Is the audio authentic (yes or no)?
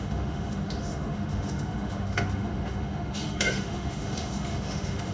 no